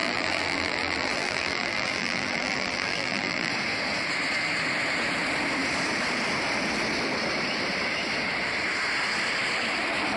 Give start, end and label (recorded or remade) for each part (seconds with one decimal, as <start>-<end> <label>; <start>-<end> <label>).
0.0-3.5 remade; 3.5-10.2 recorded